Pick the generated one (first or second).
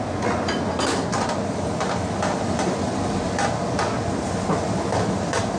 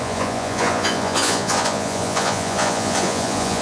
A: second